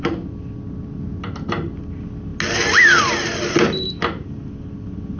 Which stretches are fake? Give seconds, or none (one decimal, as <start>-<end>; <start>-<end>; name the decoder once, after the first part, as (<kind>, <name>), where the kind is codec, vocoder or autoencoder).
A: none